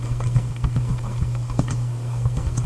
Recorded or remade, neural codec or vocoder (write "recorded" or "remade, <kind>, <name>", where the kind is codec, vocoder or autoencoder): remade, codec, SNAC